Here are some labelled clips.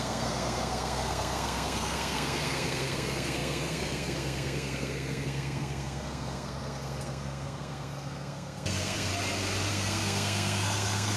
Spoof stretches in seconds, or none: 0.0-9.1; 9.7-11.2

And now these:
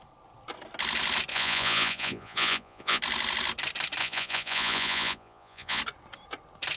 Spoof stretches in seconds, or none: 1.3-3.0; 4.0-5.8

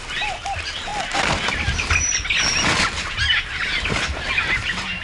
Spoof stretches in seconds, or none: 0.0-0.9; 3.9-5.0

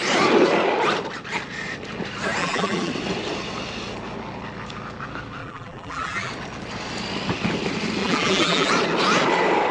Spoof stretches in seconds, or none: 2.4-2.9; 5.4-6.3; 8.0-8.7

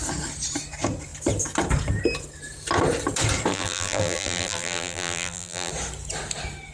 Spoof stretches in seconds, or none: 3.5-5.7

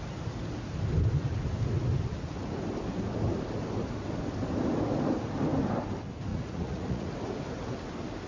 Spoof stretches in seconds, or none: 6.3-7.1

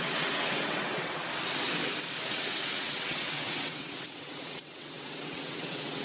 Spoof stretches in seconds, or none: 0.0-1.2; 2.3-6.0